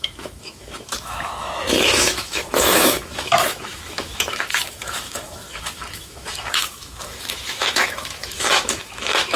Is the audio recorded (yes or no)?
no